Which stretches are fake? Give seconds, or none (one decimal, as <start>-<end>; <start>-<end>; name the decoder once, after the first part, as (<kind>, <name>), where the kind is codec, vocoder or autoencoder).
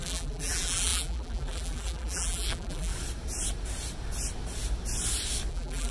0.0-2.9 (vocoder, BigVGAN v2); 5.5-5.9